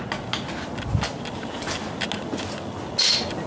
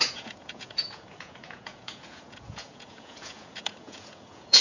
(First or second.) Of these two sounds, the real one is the first